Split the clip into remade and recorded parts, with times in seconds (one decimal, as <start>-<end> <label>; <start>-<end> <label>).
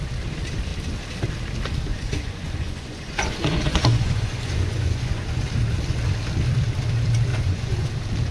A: 0.0-1.9 recorded; 1.9-5.4 remade; 5.4-7.3 recorded; 7.3-7.9 remade; 7.9-8.3 recorded